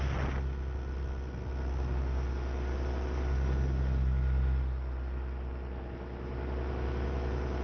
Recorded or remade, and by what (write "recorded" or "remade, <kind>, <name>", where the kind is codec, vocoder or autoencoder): recorded